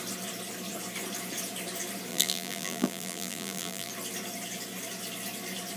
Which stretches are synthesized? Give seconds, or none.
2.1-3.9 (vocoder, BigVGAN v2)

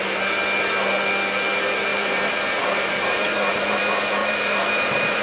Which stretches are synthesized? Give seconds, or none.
1.9-3.8 (vocoder, BigVGAN v2); 4.2-5.2